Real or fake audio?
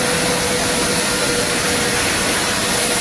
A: real